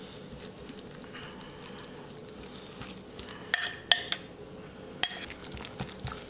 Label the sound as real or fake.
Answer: real